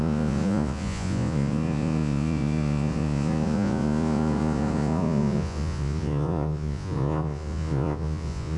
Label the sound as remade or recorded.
remade